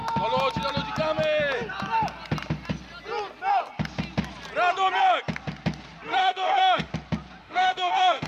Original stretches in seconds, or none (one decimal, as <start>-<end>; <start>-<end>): 0.0-6.2; 6.9-7.4